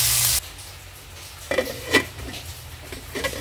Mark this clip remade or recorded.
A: recorded